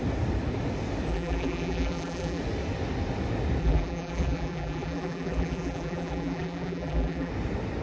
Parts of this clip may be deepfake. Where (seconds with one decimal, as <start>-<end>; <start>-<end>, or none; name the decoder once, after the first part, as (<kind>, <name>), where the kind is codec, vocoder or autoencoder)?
1.1-2.4 (vocoder, BigVGAN v2); 3.6-7.3